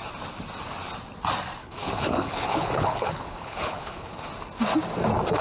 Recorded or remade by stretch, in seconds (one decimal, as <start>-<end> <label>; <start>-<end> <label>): 0.0-1.6 recorded; 1.6-4.1 remade; 4.1-5.4 recorded